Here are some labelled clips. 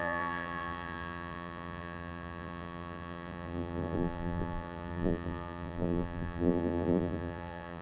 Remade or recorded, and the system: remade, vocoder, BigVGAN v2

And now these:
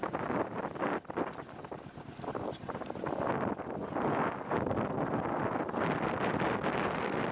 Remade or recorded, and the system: recorded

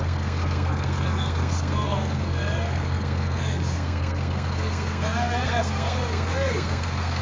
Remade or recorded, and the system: remade, codec, SNAC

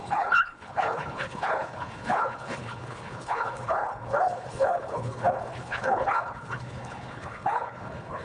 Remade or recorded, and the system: remade, codec, HILCodec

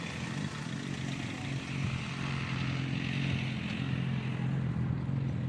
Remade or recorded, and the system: recorded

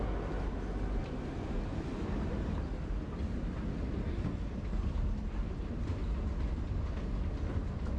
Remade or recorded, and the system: recorded